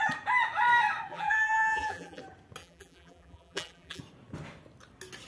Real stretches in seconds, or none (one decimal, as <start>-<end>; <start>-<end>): 0.0-1.1; 2.2-2.6; 4.0-5.3